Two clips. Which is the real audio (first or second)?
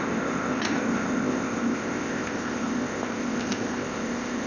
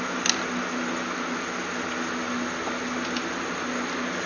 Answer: second